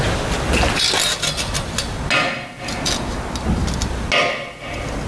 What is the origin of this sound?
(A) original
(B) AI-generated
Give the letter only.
A